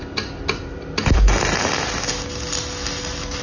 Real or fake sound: real